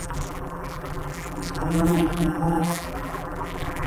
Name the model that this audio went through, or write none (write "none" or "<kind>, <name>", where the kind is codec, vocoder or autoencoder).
vocoder, BigVGAN v2